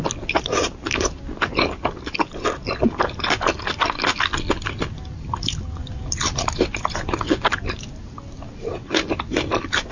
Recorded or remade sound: recorded